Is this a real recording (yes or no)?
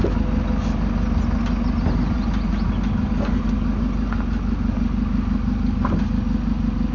yes